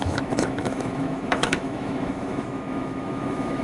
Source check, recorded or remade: remade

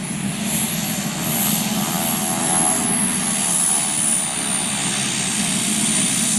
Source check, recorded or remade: recorded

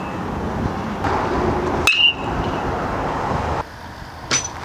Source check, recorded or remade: recorded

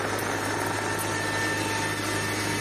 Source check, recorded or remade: recorded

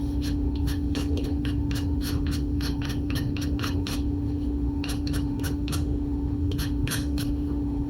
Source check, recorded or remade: remade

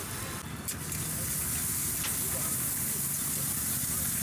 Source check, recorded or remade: recorded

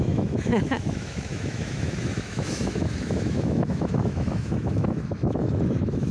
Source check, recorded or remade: remade